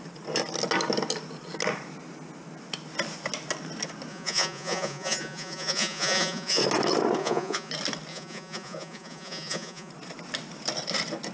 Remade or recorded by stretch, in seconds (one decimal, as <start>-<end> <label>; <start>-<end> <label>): 0.0-4.1 recorded; 4.1-6.6 remade; 6.6-7.2 recorded; 7.2-7.7 remade; 7.7-8.1 recorded; 8.1-9.9 remade; 9.9-11.3 recorded